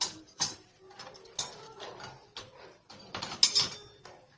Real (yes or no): yes